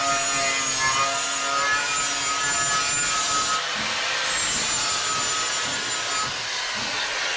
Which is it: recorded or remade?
recorded